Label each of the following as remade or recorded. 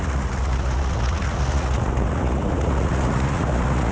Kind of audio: remade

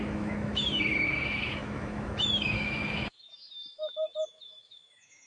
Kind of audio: remade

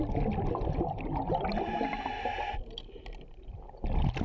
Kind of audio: recorded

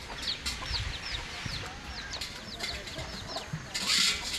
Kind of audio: recorded